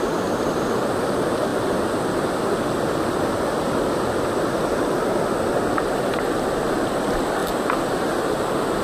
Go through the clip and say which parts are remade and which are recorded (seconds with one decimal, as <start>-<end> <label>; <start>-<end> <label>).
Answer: 0.0-1.5 remade; 1.5-5.8 recorded; 5.8-7.4 remade; 7.4-8.8 recorded